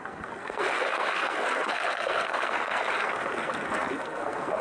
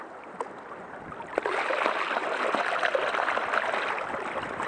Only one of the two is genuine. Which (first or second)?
second